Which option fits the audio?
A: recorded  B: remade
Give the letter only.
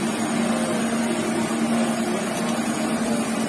A